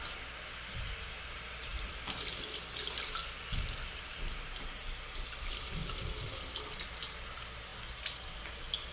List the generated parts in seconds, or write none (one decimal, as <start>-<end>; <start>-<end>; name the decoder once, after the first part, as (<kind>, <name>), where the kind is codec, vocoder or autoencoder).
none